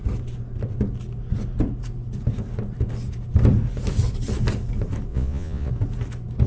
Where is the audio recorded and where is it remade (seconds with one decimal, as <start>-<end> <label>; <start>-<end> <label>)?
0.0-5.1 recorded; 5.1-5.7 remade; 5.7-6.5 recorded